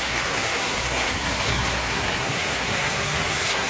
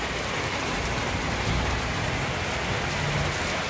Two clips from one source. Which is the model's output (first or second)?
first